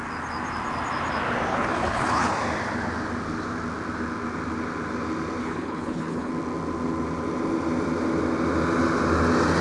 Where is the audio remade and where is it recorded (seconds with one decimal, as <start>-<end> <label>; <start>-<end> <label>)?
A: 0.0-1.5 recorded; 1.5-2.3 remade; 2.3-5.4 recorded; 5.4-6.3 remade; 6.3-9.6 recorded